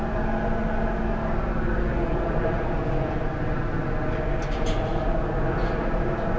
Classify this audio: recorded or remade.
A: recorded